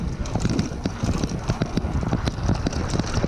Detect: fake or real real